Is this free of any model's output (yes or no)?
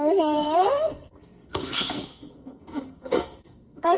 no